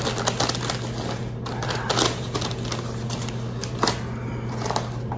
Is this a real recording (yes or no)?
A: yes